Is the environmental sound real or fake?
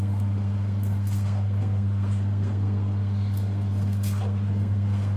fake